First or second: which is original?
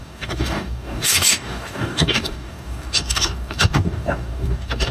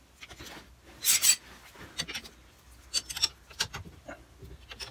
second